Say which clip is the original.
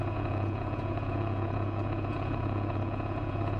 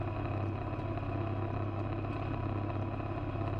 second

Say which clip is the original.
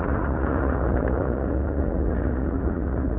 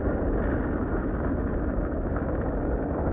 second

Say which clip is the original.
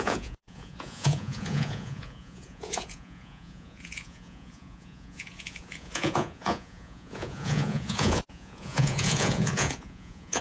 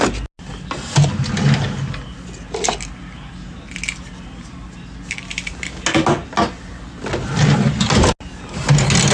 second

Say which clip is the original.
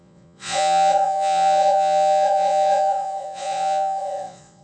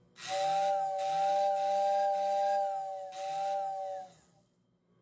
second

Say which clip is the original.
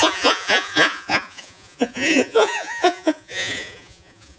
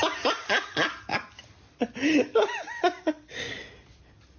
second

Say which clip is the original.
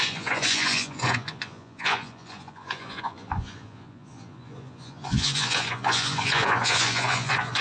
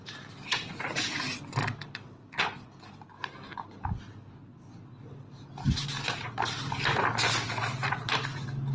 second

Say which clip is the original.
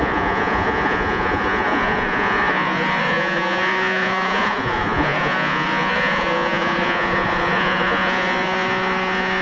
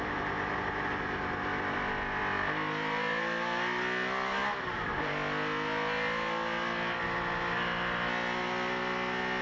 second